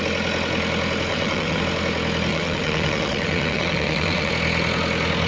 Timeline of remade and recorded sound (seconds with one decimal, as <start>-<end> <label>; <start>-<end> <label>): 0.0-1.1 recorded; 1.1-1.6 remade; 1.6-2.3 recorded; 2.3-4.3 remade; 4.3-5.3 recorded